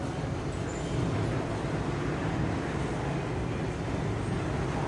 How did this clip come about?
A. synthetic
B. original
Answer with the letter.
B